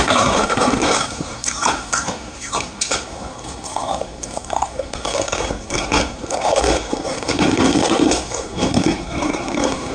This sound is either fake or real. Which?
fake